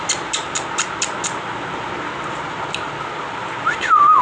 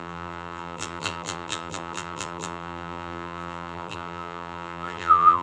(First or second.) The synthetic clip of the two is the second